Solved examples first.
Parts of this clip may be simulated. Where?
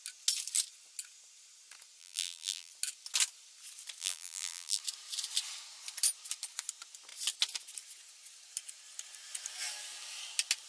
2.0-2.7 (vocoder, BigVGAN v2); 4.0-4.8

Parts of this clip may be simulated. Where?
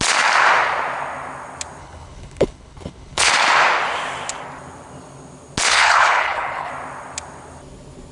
1.8-3.3 (codec, HILCodec); 5.7-6.7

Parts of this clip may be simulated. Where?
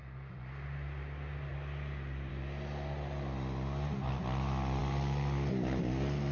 none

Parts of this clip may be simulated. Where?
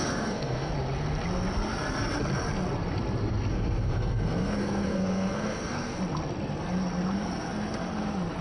0.0-0.7 (codec, SNAC); 3.5-6.0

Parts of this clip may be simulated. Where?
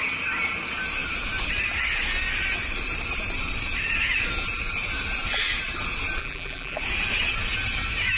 6.2-6.8 (vocoder, BigVGAN v2)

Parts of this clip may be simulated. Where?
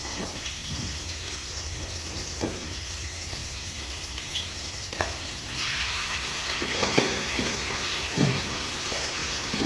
0.0-9.7 (codec, SNAC)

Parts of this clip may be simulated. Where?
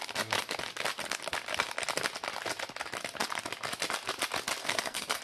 4.6-5.2 (codec, SNAC)